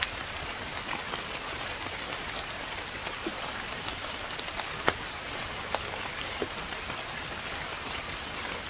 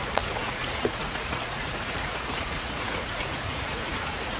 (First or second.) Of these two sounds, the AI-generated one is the second